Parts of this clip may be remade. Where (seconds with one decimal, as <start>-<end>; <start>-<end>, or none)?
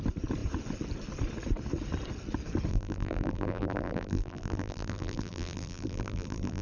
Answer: 2.7-6.6